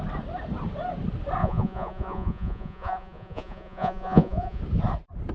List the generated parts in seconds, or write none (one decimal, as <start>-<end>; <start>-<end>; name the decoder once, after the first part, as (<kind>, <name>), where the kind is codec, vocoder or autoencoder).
1.4-4.6 (vocoder, Vocos)